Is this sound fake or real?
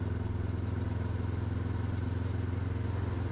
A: real